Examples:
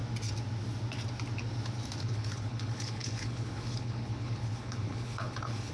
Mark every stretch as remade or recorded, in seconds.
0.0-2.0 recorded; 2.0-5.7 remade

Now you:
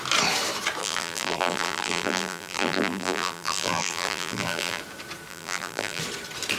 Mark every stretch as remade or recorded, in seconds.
0.0-0.8 recorded; 0.8-4.8 remade; 4.8-5.3 recorded; 5.3-6.0 remade; 6.0-6.6 recorded

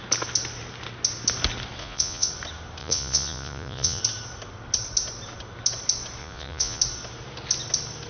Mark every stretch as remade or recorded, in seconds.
0.0-1.8 recorded; 1.8-2.3 remade; 2.3-2.8 recorded; 2.8-4.0 remade; 4.0-6.2 recorded; 6.2-6.8 remade; 6.8-8.1 recorded

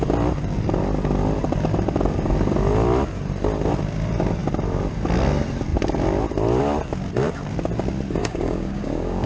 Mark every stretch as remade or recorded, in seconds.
0.0-8.2 recorded; 8.2-9.3 remade

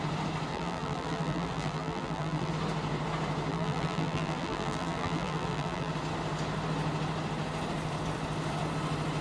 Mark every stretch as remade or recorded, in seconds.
0.0-0.5 recorded; 0.5-2.5 remade; 2.5-3.5 recorded; 3.5-5.9 remade; 5.9-9.2 recorded